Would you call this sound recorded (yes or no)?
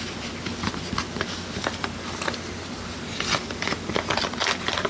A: yes